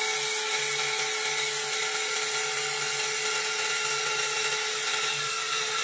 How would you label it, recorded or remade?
recorded